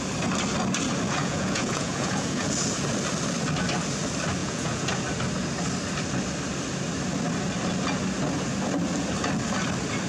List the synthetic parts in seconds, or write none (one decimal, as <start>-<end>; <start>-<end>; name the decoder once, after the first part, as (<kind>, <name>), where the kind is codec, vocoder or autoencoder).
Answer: 1.2-2.5 (vocoder, Vocos); 4.4-4.9